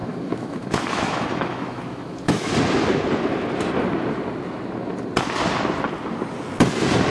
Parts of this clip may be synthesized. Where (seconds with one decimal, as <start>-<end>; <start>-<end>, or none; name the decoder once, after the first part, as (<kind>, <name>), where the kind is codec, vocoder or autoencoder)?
0.0-2.5 (autoencoder, DAC-VAE)